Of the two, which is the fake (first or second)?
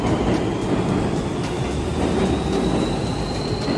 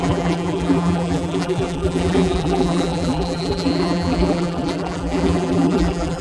second